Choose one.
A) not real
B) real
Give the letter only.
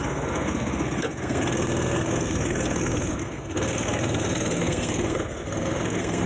A